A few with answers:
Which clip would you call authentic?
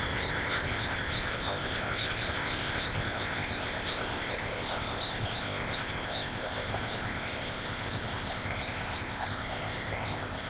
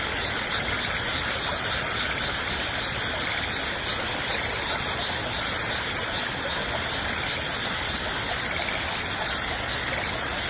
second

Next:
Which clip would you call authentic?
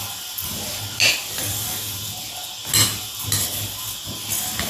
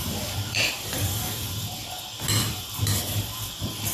first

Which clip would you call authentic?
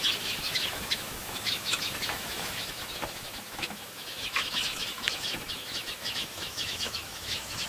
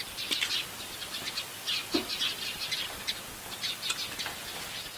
second